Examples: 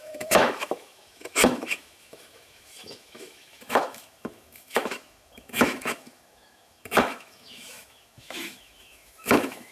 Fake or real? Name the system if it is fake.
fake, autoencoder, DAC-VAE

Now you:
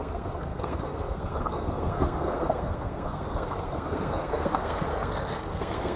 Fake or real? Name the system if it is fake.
fake, codec, SNAC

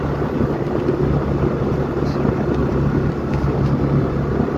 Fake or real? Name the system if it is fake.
real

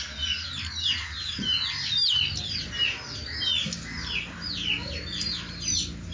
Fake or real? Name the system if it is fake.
real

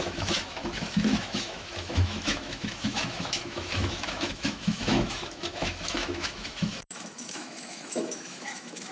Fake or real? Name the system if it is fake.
fake, autoencoder, DAC-VAE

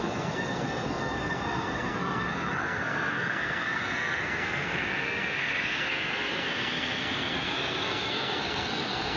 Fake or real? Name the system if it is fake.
fake, codec, SNAC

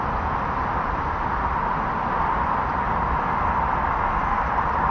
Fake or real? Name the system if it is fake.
real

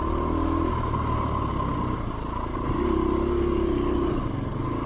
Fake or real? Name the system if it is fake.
real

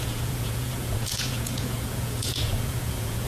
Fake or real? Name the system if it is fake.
fake, vocoder, Vocos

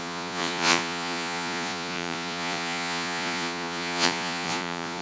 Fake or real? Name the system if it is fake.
fake, vocoder, Vocos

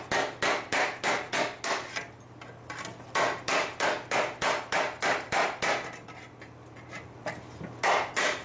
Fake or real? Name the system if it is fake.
real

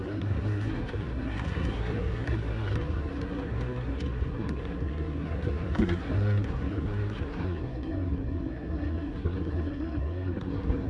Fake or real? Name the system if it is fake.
fake, codec, SNAC